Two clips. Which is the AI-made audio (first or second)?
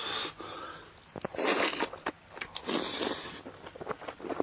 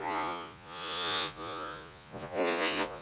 second